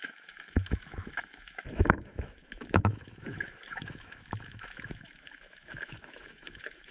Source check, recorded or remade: remade